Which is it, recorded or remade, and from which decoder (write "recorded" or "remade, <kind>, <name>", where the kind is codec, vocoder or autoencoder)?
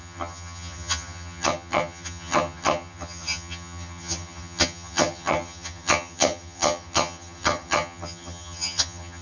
remade, vocoder, HiFi-GAN